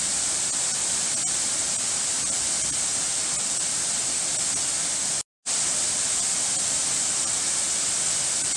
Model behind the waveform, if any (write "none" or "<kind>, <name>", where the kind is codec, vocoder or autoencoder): none